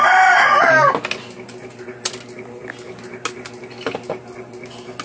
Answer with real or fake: real